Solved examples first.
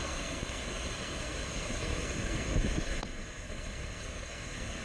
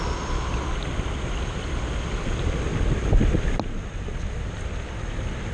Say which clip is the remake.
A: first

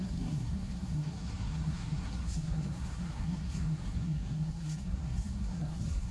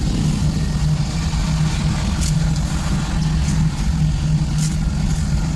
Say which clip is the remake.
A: first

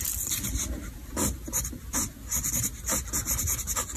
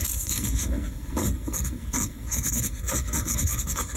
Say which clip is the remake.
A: second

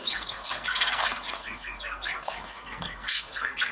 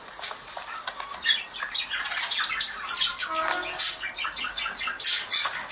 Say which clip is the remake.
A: first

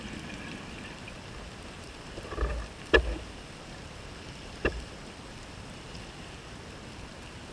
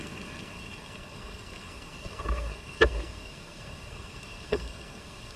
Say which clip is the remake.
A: second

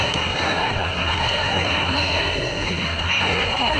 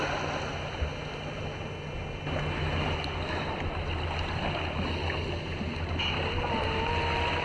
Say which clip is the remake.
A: first